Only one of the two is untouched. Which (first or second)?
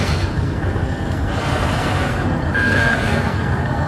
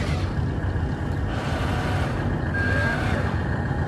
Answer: second